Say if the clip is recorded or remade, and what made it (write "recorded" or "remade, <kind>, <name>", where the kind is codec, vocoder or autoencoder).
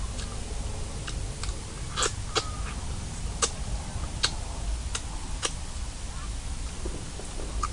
recorded